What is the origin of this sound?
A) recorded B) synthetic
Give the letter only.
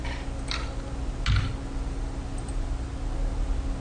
A